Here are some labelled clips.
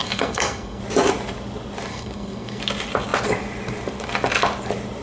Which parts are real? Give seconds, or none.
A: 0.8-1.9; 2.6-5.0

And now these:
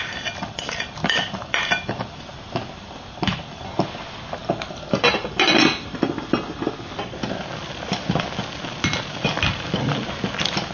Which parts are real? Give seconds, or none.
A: 0.0-10.7

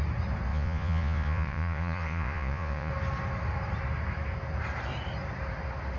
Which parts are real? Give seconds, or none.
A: 0.0-0.5; 2.9-6.0

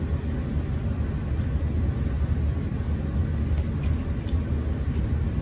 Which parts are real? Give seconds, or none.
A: 0.0-5.4